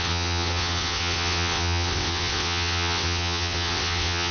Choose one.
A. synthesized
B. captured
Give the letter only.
A